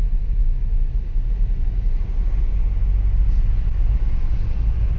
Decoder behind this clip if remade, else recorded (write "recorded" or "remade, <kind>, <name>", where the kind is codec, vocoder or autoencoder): recorded